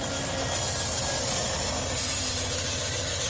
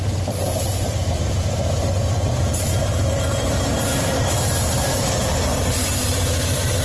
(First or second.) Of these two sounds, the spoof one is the second